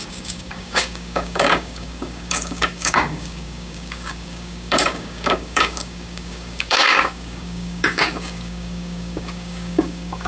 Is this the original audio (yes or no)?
no